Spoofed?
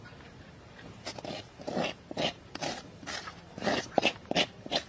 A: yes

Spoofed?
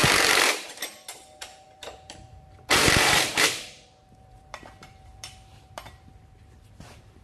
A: yes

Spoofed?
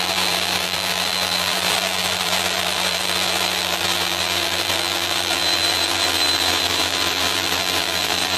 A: yes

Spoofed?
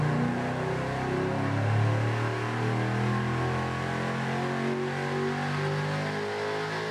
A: no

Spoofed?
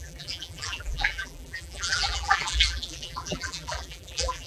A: yes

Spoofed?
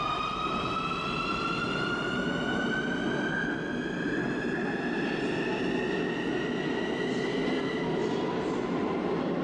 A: no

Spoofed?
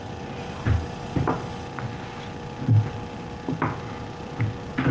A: no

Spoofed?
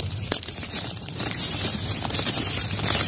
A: yes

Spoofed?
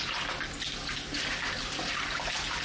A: no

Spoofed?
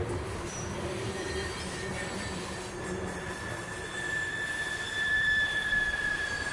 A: yes